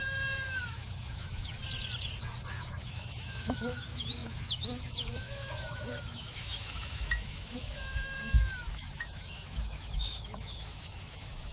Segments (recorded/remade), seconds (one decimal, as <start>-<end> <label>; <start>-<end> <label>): 0.0-1.6 remade; 1.6-2.5 recorded; 2.5-11.5 remade